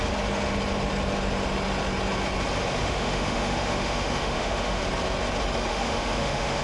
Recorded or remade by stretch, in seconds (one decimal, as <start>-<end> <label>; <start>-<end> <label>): 0.0-2.8 recorded; 2.8-4.8 remade; 4.8-5.7 recorded; 5.7-6.6 remade